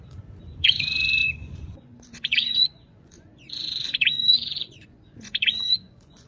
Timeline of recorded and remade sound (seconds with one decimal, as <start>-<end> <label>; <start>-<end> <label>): 0.0-6.3 remade